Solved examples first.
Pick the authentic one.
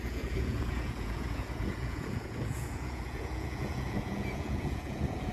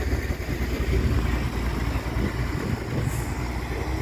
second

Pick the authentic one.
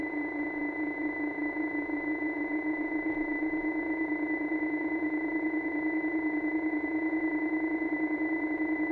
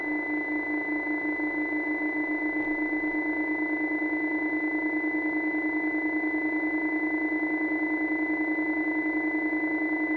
second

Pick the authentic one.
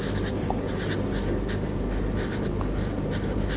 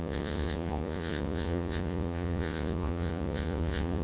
first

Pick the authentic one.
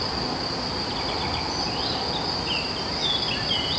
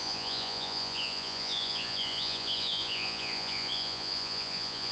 first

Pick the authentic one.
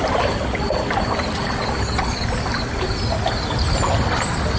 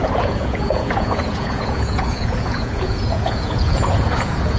first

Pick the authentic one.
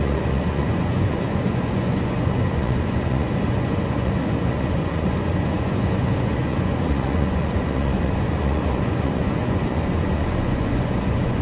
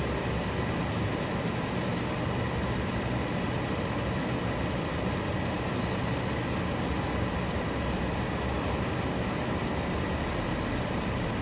second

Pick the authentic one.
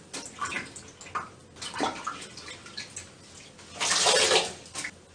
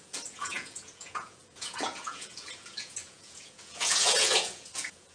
first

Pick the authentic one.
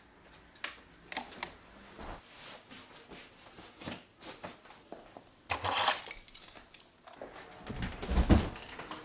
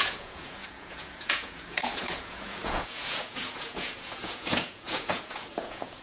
first